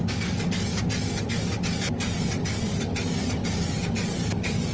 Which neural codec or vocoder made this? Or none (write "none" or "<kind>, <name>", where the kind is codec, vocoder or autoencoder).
none